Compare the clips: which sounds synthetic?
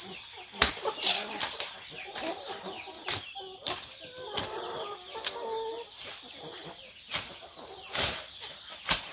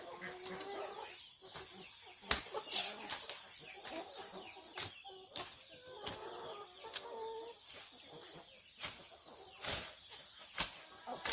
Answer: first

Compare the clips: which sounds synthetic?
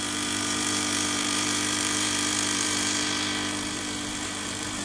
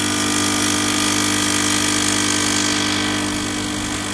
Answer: first